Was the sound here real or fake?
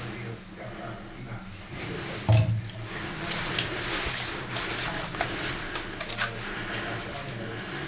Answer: real